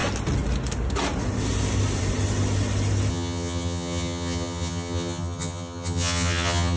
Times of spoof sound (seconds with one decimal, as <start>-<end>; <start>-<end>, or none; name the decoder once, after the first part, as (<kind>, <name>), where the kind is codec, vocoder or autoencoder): 3.1-6.8 (vocoder, HiFi-GAN)